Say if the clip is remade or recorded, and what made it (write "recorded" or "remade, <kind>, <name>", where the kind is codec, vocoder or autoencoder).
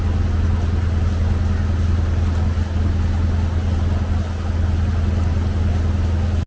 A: recorded